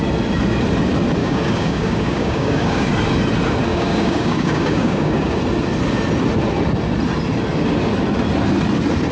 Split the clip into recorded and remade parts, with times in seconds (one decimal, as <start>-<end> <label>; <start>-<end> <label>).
0.0-1.2 recorded; 1.2-2.9 remade; 2.9-3.7 recorded; 3.7-5.4 remade; 5.4-9.1 recorded